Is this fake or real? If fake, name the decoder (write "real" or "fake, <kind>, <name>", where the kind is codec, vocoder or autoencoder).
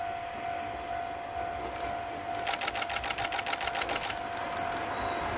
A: real